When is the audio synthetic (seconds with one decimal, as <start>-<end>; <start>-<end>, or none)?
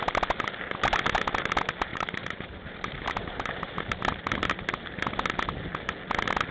1.9-3.8